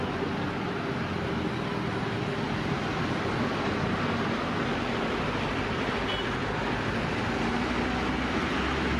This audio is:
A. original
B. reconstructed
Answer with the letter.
A